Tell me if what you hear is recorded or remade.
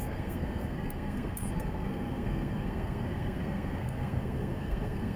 remade